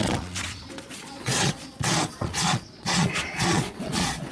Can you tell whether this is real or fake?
fake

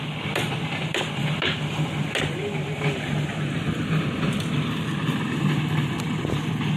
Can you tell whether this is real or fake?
real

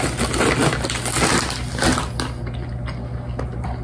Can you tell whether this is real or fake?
real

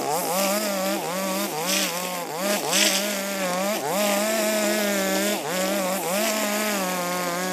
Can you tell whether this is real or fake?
real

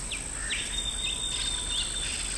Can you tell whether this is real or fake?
real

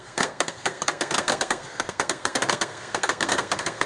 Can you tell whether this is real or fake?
fake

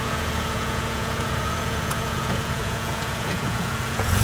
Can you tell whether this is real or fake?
fake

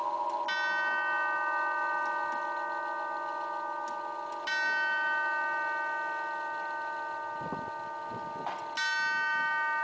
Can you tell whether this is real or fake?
real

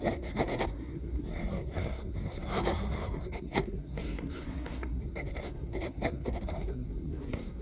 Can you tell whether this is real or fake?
fake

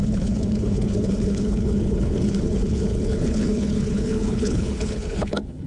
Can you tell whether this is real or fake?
fake